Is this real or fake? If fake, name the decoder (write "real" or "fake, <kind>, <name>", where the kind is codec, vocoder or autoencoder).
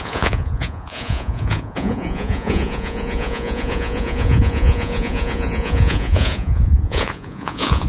fake, vocoder, Vocos